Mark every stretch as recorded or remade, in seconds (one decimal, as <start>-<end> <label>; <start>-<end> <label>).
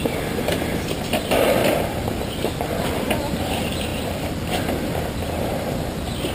0.0-6.3 recorded